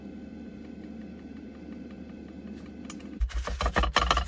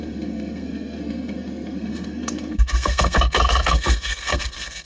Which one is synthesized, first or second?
second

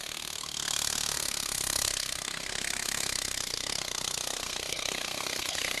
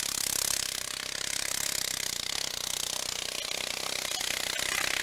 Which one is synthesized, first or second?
first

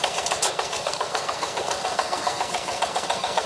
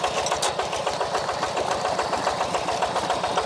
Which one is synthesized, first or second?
first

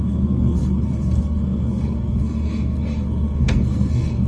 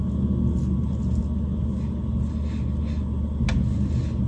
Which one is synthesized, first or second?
first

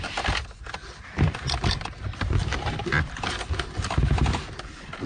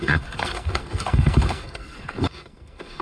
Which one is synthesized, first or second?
second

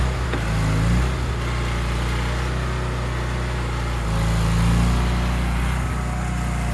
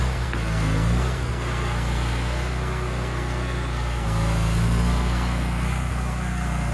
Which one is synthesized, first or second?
second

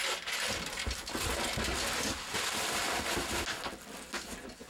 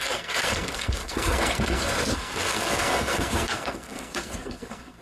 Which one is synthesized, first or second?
second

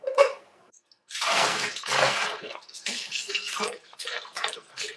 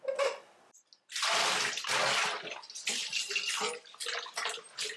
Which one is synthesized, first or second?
first